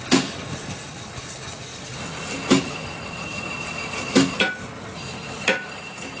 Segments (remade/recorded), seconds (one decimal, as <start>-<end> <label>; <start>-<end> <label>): 0.0-6.2 recorded